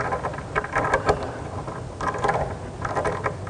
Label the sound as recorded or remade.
recorded